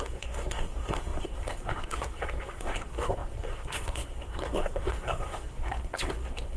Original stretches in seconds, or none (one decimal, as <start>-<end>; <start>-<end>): none